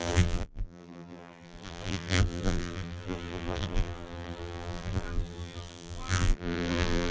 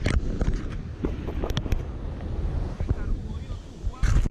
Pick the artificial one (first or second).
first